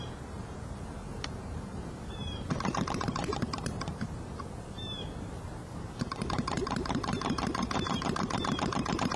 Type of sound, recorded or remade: remade